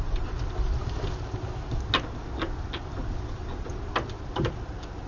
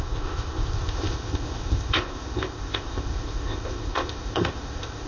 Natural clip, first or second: first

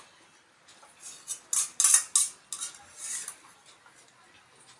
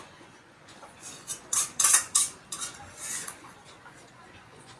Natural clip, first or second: first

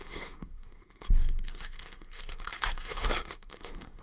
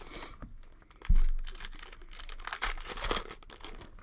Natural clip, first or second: second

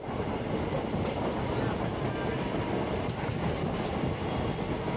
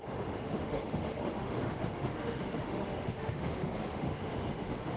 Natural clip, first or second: first